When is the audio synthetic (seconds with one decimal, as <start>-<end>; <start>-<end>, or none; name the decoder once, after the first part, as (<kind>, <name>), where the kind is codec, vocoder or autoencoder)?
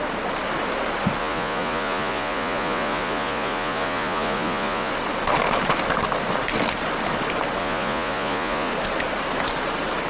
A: 1.2-4.9 (vocoder, Vocos); 7.6-8.7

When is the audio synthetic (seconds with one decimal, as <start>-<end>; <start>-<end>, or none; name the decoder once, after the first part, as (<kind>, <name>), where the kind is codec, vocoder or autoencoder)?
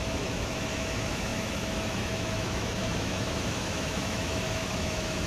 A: 0.0-5.3 (autoencoder, DAC-VAE)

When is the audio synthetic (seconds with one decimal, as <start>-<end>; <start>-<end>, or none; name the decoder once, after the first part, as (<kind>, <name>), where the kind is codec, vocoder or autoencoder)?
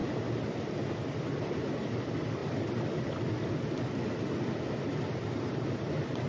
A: none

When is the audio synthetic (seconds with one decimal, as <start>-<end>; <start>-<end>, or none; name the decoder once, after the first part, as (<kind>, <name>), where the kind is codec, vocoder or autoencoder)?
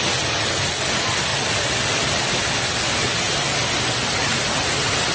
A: none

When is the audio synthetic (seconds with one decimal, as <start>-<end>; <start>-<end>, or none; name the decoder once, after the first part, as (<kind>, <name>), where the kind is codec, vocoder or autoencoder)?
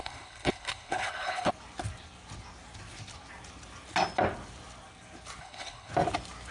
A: 0.0-1.5 (codec, HILCodec); 5.4-5.9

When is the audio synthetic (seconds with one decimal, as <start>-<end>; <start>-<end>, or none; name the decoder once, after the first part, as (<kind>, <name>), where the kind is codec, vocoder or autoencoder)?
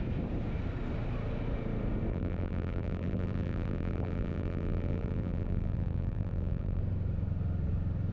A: 2.1-6.8 (vocoder, BigVGAN v2)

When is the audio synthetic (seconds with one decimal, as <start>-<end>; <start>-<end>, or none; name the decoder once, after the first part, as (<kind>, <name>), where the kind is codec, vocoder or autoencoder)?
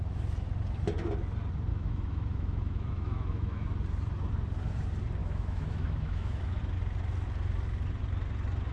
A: 1.7-3.7 (autoencoder, DAC-VAE); 5.2-6.6